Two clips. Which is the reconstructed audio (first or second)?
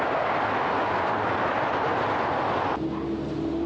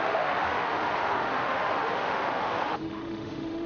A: second